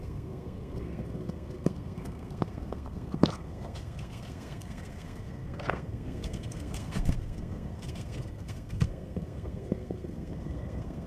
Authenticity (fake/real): fake